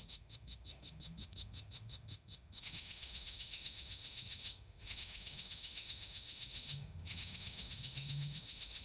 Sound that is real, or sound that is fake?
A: fake